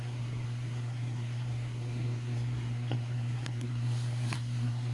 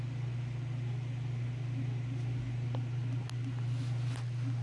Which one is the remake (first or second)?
first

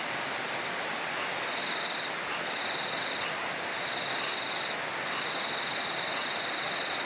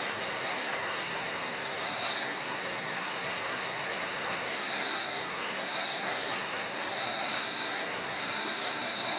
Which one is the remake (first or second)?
second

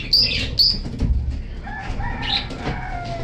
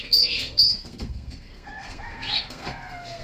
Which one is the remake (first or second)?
second